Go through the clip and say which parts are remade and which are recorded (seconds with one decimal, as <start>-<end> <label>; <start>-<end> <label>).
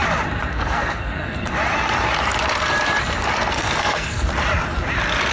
0.0-0.5 recorded; 0.5-1.5 remade; 1.5-3.5 recorded; 3.5-4.3 remade; 4.3-5.3 recorded